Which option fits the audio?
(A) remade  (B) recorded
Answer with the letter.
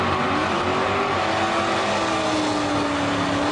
B